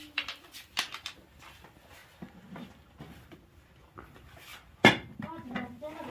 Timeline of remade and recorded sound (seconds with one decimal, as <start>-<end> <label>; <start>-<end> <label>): 0.0-6.1 recorded